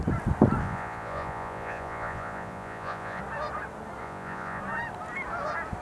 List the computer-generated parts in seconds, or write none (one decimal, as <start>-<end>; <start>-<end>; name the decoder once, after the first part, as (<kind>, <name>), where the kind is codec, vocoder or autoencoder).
0.6-3.2 (vocoder, Vocos); 4.0-4.6